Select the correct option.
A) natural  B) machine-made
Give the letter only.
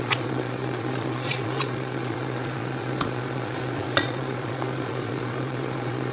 B